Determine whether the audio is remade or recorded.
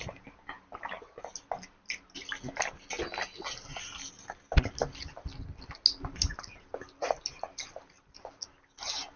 recorded